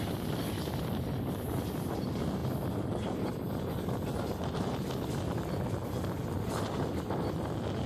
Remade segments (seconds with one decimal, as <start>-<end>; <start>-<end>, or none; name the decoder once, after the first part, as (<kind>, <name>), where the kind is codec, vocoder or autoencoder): 0.0-7.9 (vocoder, BigVGAN v2)